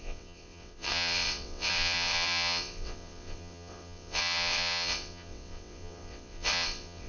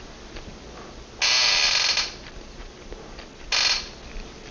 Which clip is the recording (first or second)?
second